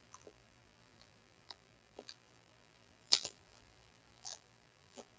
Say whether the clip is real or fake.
fake